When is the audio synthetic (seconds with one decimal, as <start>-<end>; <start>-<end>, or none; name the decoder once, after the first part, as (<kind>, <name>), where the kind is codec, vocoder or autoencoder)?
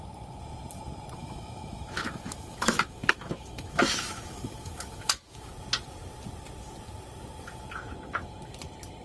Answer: 1.2-5.5 (autoencoder, DAC-VAE)